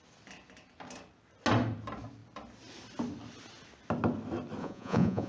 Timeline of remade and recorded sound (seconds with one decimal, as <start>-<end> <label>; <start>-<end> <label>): 0.0-4.6 recorded; 4.6-5.3 remade